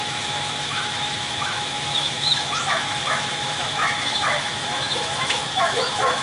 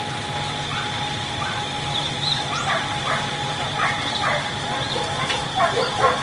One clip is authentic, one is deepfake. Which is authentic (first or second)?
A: second